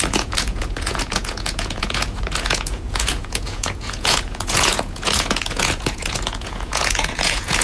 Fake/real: fake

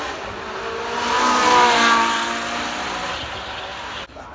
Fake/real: real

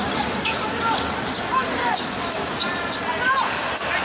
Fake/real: real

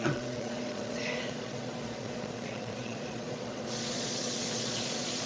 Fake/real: fake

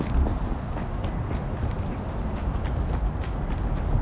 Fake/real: real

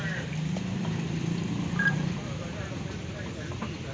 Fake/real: real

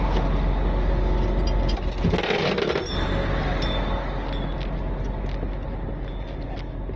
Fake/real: real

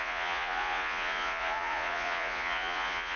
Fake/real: fake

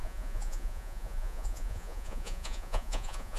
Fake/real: fake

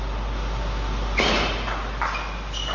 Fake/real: real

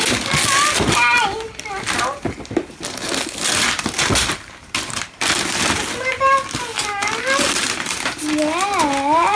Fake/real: real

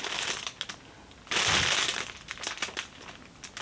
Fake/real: real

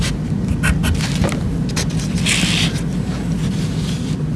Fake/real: real